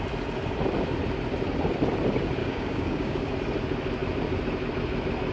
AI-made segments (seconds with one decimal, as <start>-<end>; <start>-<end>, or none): 2.4-3.3